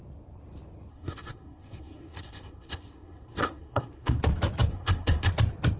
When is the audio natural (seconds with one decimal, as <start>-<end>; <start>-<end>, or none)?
0.0-0.9; 4.2-4.7; 5.3-5.8